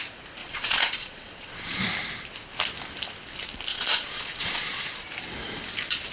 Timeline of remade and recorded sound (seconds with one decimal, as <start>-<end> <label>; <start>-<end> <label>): 0.0-0.4 recorded; 0.4-1.8 remade; 1.8-3.7 recorded; 3.7-4.9 remade; 4.9-6.1 recorded